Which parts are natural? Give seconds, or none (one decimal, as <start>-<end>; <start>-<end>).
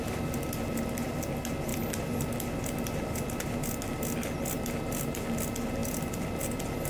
0.0-6.9